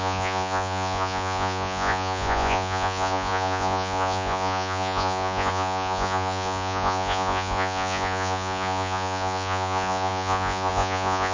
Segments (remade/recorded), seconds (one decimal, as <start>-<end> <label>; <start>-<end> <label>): 0.0-11.3 remade